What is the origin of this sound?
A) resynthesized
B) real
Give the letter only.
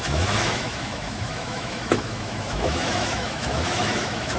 A